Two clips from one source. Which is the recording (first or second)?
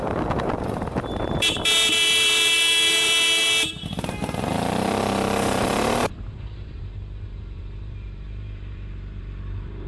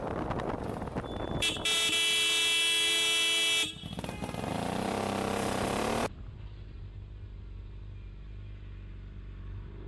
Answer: second